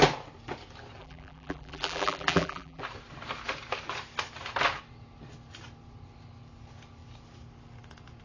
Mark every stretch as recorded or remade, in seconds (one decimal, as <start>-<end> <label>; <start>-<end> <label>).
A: 0.0-1.0 recorded; 1.0-2.8 remade; 2.8-8.2 recorded